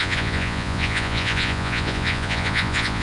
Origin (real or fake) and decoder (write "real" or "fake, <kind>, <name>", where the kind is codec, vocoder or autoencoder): fake, vocoder, Vocos